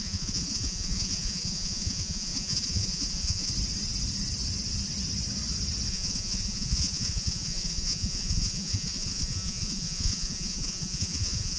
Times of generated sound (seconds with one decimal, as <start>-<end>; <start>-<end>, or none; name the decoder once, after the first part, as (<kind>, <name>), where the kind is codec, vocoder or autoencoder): 0.0-3.5 (vocoder, Vocos); 5.9-11.6